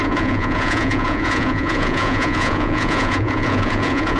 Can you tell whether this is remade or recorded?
remade